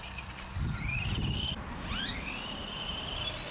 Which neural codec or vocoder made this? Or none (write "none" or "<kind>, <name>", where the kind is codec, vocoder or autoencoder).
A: none